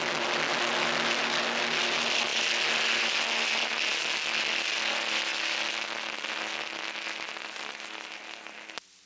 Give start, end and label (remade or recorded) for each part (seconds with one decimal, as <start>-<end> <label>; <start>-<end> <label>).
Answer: 0.0-9.1 recorded